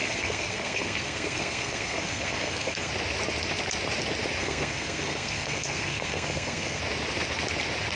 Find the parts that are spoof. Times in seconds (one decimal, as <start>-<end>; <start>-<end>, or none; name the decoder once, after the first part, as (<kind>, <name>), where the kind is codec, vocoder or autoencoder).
0.0-2.9 (codec, SNAC); 4.4-6.8